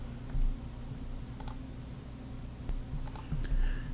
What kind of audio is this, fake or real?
real